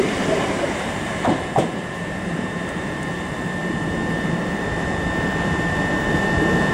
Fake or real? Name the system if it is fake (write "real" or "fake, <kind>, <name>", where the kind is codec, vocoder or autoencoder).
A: fake, vocoder, BigVGAN v2